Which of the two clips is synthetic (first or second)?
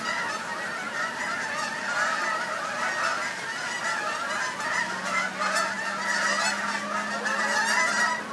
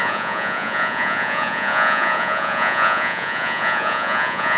second